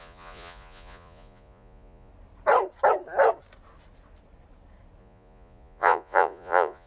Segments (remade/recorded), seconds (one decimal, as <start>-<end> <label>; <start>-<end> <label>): 0.0-2.1 remade; 2.1-5.0 recorded; 5.0-6.9 remade

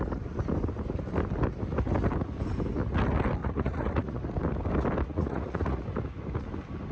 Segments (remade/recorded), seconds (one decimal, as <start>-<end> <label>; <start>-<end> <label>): 0.0-3.4 recorded; 3.4-4.2 remade; 4.2-5.1 recorded; 5.1-5.8 remade; 5.8-6.9 recorded

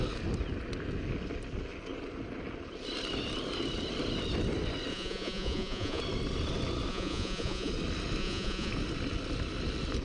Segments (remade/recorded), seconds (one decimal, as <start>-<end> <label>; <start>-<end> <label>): 0.0-4.9 recorded; 4.9-6.0 remade; 6.0-6.9 recorded; 6.9-7.7 remade; 7.7-8.2 recorded; 8.2-8.7 remade; 8.7-10.0 recorded